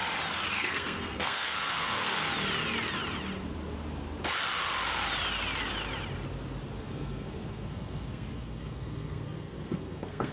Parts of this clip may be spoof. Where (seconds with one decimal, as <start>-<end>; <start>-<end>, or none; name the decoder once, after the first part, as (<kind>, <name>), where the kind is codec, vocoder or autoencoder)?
0.5-2.2 (codec, SNAC); 6.8-10.3